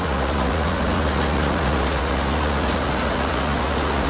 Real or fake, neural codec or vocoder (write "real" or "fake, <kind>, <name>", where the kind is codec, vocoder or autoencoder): fake, vocoder, Vocos